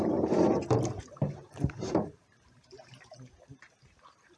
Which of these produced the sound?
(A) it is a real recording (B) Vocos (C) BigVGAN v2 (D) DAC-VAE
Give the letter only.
C